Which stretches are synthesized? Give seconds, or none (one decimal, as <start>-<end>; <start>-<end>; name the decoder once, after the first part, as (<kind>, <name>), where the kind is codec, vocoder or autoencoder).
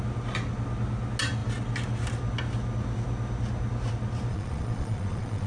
4.3-5.5 (vocoder, Vocos)